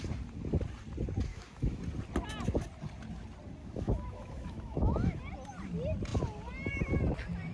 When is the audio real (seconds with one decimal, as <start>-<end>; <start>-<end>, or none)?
0.0-1.3; 1.8-3.6; 5.2-7.5